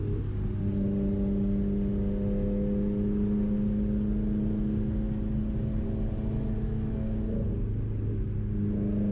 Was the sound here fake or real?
real